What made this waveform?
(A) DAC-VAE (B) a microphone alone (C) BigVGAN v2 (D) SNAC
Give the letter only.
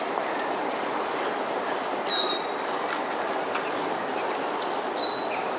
B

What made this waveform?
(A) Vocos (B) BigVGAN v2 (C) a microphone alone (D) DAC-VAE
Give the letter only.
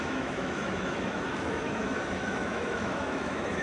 D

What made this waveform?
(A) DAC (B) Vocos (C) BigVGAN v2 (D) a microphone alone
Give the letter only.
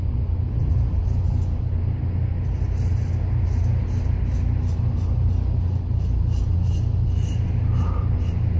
C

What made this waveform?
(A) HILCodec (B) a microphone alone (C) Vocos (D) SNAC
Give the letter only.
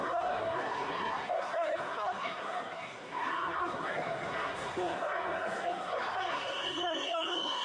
D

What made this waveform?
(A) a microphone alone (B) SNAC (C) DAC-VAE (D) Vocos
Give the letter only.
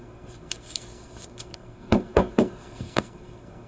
B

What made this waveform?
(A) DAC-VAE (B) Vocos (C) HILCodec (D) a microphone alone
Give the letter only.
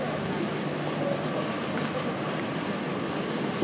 D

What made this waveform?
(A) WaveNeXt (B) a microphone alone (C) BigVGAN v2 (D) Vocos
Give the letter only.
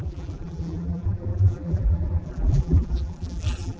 C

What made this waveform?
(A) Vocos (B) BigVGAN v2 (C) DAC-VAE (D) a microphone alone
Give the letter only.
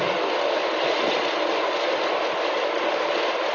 D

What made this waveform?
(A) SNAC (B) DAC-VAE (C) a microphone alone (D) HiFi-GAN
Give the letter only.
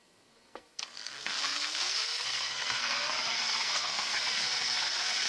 A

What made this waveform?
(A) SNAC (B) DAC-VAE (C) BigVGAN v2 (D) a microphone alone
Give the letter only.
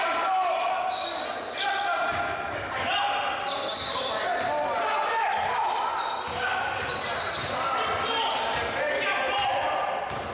D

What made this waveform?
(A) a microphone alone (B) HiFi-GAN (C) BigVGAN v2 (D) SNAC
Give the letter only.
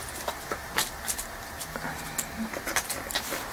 A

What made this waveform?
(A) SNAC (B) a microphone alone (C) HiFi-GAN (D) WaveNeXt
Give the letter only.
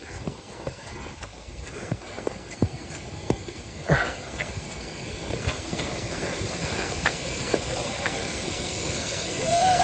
A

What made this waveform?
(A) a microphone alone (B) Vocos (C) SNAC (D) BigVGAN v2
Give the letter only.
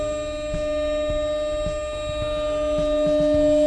A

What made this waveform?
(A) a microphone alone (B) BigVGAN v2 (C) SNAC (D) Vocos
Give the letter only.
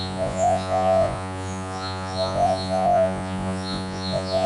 D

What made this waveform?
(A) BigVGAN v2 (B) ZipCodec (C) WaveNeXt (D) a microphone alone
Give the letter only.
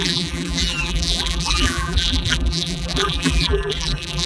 A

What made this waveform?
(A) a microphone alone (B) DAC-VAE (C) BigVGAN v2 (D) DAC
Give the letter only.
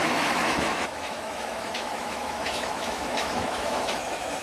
B